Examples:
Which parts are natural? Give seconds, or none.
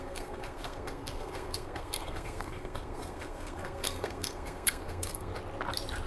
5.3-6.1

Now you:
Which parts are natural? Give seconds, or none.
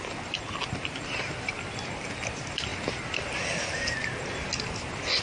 0.0-5.2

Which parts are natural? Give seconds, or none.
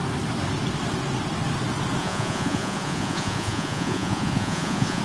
0.0-2.0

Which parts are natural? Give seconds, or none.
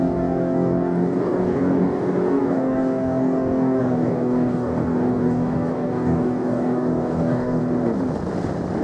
7.6-8.8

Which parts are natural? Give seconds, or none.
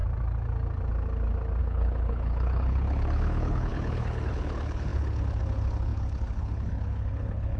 0.0-1.6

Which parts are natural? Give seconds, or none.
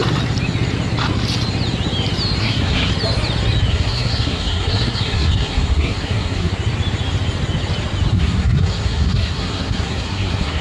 0.0-2.4; 2.9-3.7; 6.5-8.1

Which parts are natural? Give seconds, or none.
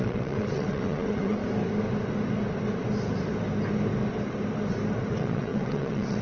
1.4-5.1